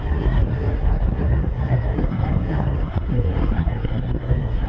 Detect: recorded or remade remade